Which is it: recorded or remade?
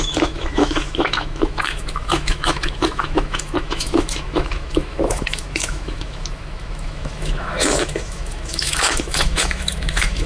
remade